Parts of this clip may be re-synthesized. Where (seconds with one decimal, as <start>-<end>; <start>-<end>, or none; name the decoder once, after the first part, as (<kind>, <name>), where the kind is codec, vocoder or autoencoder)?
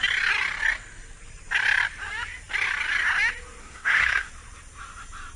3.6-4.3 (codec, SNAC)